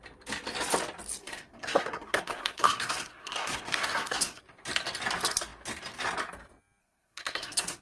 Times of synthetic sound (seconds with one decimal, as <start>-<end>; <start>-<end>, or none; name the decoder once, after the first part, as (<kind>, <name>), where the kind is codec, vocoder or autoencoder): 1.2-4.4 (codec, SNAC); 6.8-7.8